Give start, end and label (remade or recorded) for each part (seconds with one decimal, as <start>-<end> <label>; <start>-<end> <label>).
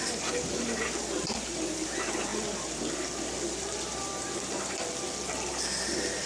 0.0-6.3 remade